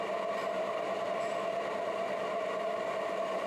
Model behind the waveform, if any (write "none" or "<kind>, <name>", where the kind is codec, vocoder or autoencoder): none